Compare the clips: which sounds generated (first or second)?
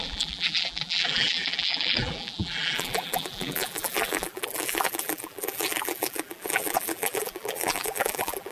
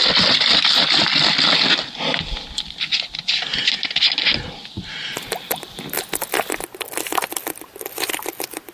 first